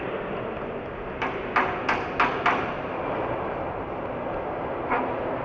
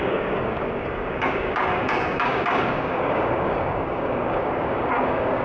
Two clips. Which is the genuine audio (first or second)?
first